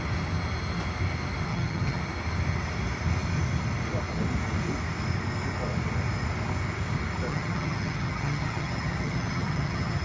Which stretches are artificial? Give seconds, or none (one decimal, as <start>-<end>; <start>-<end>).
1.5-2.0; 7.3-10.0